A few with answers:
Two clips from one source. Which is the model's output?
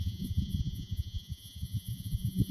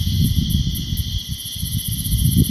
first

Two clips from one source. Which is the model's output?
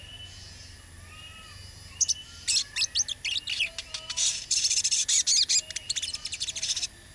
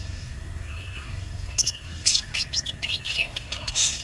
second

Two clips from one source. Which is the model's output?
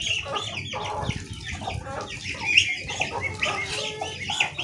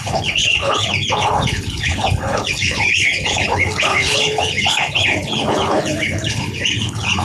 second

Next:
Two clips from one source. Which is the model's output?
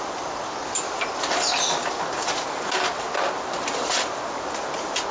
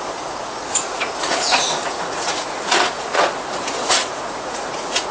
second